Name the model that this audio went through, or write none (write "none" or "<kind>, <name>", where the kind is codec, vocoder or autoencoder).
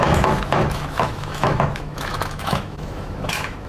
autoencoder, DAC-VAE